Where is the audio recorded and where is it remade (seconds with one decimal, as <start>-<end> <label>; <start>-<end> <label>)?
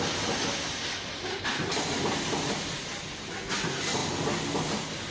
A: 0.0-5.1 recorded